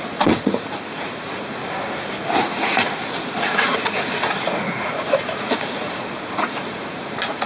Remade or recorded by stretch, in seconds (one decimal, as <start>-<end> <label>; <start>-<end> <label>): 0.0-1.6 remade; 1.6-2.4 recorded; 2.4-7.5 remade